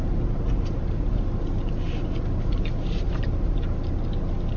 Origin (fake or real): real